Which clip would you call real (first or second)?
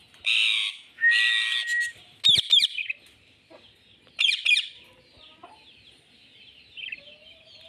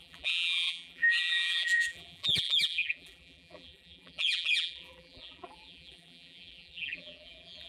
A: first